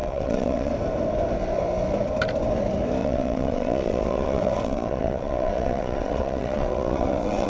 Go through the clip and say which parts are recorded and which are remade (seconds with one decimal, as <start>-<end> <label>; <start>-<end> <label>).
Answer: 0.0-0.7 remade; 0.7-3.0 recorded; 3.0-7.5 remade

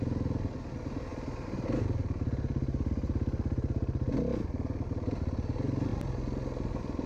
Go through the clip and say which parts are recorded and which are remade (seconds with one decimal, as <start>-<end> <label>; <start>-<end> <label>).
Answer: 0.0-7.1 recorded